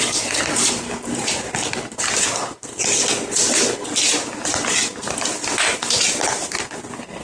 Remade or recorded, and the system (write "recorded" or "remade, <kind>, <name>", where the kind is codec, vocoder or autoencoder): recorded